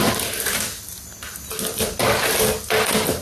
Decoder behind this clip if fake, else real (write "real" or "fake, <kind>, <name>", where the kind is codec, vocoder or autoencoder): real